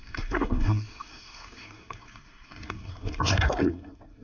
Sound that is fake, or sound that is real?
fake